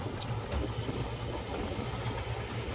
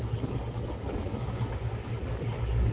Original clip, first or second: first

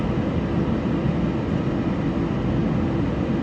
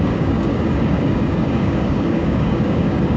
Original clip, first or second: first